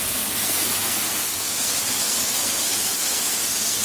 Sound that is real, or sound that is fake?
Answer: fake